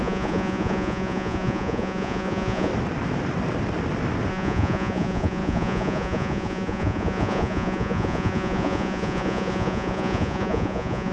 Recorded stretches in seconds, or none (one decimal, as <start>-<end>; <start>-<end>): 2.7-4.3